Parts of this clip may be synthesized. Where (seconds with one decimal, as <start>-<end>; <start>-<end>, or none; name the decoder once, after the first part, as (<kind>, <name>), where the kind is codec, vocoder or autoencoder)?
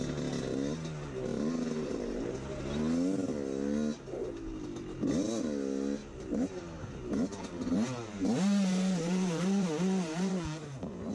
1.3-2.6 (vocoder, BigVGAN v2); 6.0-11.1